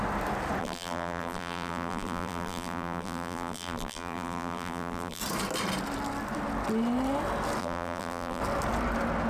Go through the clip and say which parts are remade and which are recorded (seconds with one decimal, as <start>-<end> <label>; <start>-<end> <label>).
0.0-0.6 recorded; 0.6-5.2 remade; 5.2-7.6 recorded; 7.6-8.4 remade; 8.4-9.3 recorded